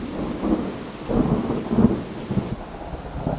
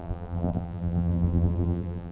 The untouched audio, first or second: first